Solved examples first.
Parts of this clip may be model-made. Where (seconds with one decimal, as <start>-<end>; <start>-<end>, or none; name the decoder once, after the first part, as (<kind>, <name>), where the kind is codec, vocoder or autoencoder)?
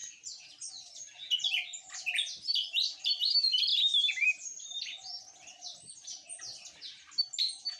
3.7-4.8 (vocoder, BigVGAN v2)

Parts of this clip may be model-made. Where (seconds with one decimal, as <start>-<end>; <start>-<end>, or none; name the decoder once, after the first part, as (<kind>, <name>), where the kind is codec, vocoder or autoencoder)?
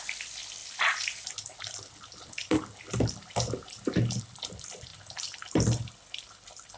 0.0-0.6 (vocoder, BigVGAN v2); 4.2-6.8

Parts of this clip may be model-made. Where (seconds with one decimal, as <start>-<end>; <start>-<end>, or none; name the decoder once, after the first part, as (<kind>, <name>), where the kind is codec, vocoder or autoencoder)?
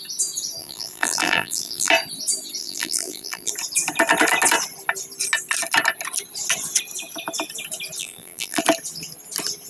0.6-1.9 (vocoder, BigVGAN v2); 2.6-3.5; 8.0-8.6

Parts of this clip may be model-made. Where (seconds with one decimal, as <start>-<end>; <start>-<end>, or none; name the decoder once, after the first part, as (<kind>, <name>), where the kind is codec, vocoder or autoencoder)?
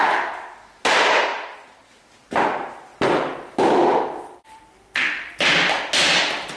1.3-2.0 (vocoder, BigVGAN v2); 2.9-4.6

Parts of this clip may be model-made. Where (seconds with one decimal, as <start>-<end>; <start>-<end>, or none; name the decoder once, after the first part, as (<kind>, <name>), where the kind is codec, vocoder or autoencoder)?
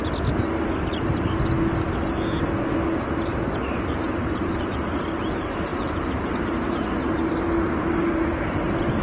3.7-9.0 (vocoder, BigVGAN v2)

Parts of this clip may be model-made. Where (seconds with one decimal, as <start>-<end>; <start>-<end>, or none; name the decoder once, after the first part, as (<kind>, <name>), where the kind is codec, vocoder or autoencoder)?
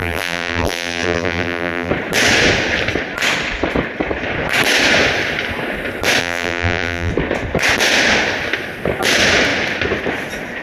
0.0-1.9 (vocoder, BigVGAN v2); 6.2-7.1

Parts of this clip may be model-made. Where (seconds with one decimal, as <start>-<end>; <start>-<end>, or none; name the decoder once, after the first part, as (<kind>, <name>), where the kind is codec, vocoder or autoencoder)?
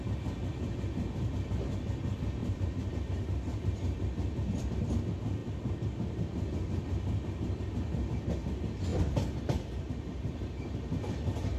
2.4-2.9 (vocoder, BigVGAN v2)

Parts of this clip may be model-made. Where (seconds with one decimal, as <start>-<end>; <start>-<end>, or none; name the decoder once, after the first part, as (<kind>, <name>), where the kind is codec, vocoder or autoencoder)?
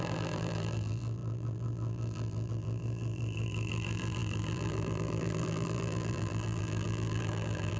0.0-7.8 (vocoder, BigVGAN v2)